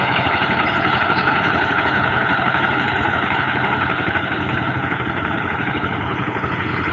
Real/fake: fake